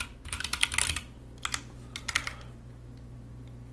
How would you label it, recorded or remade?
recorded